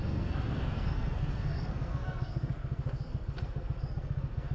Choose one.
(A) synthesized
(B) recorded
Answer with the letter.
A